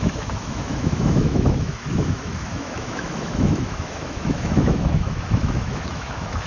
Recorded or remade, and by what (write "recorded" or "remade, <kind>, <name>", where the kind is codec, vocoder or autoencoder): remade, autoencoder, DAC-VAE